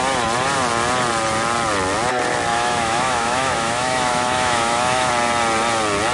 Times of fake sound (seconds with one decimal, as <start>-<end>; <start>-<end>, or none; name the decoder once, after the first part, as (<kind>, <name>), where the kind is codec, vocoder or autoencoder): 2.5-5.1 (autoencoder, DAC-VAE)